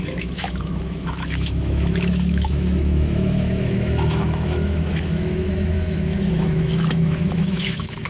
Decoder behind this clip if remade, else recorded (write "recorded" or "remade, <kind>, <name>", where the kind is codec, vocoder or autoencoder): remade, autoencoder, DAC-VAE